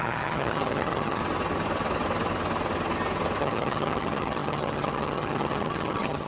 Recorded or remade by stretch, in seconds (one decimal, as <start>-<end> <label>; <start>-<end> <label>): 0.0-1.2 remade; 1.2-3.4 recorded; 3.4-6.3 remade